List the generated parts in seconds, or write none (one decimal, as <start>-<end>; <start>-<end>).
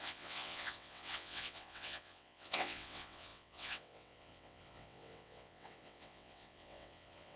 0.0-7.4